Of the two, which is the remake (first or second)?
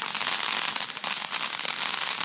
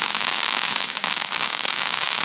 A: second